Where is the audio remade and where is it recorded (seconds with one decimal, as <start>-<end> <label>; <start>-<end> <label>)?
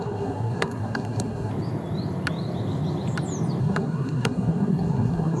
0.0-1.5 remade; 1.5-3.6 recorded; 3.6-5.4 remade